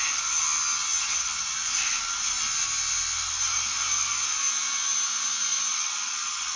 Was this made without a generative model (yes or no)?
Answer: yes